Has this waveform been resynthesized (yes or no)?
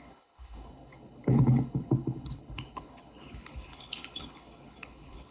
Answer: yes